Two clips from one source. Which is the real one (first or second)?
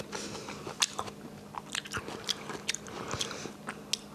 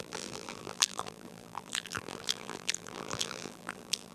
first